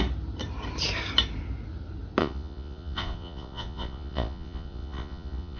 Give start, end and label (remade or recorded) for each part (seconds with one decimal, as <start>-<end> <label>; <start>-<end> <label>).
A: 0.0-2.2 recorded; 2.2-5.6 remade